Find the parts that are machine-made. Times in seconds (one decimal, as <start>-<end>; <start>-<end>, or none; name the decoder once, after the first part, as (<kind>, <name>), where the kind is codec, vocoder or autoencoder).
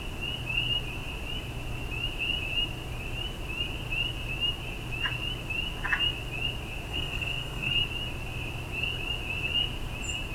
6.9-7.7 (codec, SNAC)